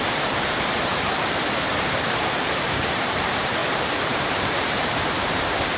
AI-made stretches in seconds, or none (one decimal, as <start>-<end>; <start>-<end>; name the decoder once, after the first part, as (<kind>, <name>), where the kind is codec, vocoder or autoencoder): 0.0-3.6 (vocoder, BigVGAN v2); 4.3-5.8